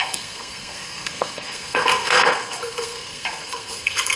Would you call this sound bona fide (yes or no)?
no